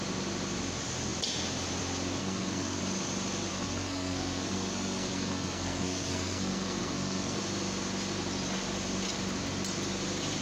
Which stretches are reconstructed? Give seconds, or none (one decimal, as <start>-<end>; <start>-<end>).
2.2-2.8; 3.5-7.4

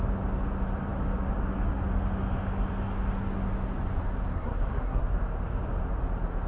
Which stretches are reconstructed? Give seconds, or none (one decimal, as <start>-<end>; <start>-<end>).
4.3-5.0

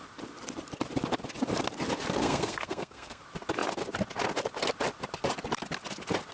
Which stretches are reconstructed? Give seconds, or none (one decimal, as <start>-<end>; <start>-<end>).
2.2-3.2